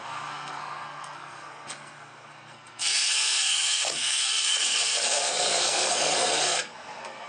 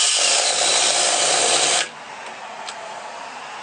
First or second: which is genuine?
second